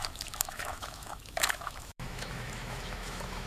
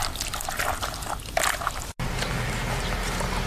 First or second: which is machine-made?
first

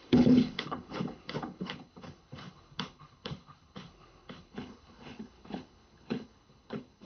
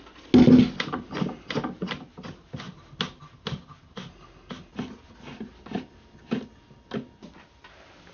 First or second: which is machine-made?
first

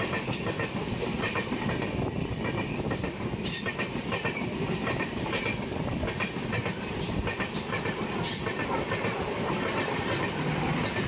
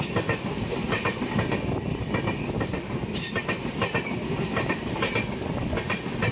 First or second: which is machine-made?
first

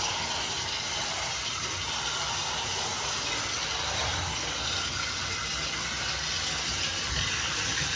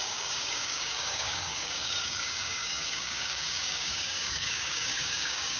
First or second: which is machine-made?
second